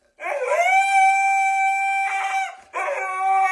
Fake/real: real